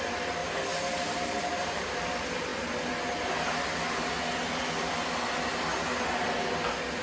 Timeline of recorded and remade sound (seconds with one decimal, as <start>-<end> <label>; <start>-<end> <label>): 0.0-0.4 remade; 0.4-1.2 recorded; 1.2-2.5 remade; 2.5-7.0 recorded